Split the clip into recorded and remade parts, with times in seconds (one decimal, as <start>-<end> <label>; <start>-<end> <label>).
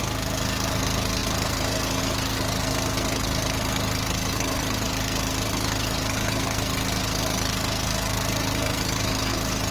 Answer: 0.0-9.7 remade